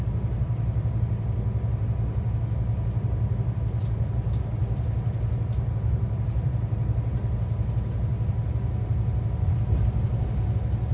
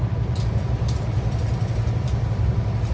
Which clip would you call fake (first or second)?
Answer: second